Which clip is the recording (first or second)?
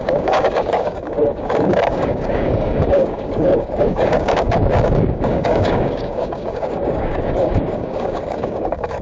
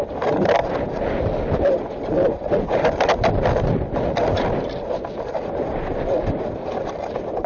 second